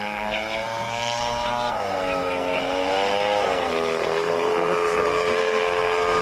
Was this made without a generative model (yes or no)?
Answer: no